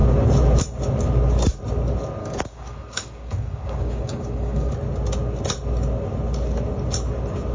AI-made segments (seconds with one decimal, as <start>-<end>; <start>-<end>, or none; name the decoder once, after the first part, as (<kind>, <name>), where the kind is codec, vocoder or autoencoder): 2.2-4.7 (codec, DAC)